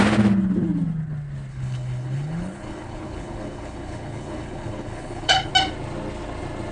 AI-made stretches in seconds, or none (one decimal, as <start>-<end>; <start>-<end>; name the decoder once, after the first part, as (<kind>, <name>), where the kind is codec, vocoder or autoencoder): 1.5-5.5 (codec, HILCodec)